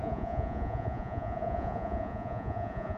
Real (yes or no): no